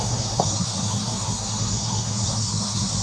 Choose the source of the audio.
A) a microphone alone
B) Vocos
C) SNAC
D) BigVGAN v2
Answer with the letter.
C